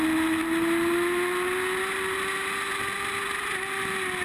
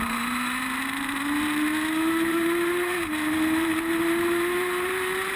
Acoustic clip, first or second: first